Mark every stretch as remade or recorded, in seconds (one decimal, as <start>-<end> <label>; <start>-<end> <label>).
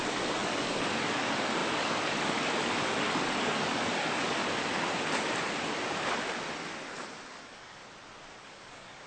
0.0-4.4 remade; 4.4-7.3 recorded; 7.3-7.8 remade; 7.8-8.4 recorded; 8.4-9.1 remade